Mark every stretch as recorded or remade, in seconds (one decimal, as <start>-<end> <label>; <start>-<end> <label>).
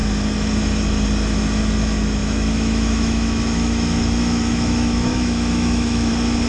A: 0.0-2.2 recorded; 2.2-6.1 remade; 6.1-6.5 recorded